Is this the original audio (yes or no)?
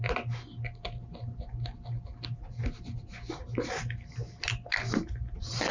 yes